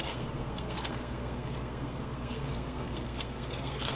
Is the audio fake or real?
fake